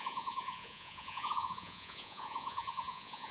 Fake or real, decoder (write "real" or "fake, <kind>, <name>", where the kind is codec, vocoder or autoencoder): fake, vocoder, Vocos